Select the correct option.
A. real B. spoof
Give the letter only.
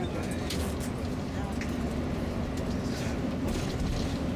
A